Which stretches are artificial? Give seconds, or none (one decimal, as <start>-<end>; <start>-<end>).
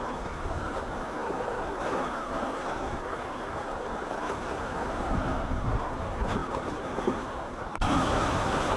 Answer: 0.0-8.8